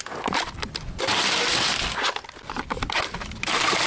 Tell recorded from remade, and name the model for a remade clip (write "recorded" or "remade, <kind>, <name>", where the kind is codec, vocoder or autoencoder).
recorded